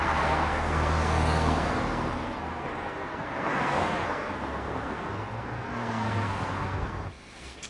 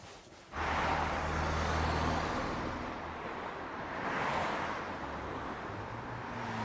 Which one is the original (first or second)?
second